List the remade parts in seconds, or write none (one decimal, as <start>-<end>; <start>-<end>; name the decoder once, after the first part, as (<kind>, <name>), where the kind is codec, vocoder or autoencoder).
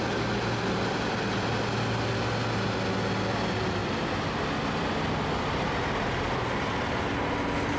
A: none